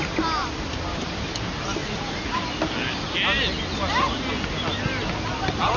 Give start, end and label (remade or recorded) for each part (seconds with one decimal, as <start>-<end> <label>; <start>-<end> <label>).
0.0-1.8 recorded; 1.8-2.4 remade; 2.4-5.8 recorded